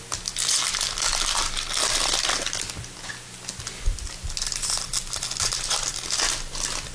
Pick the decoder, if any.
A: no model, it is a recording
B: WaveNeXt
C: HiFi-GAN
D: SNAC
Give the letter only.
A